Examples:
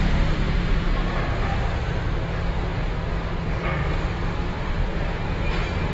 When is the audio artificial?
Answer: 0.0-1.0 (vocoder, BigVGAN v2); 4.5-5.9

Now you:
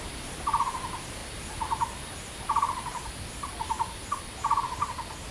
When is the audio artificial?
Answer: none

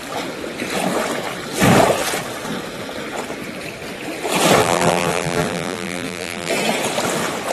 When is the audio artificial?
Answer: 4.6-6.5 (vocoder, BigVGAN v2)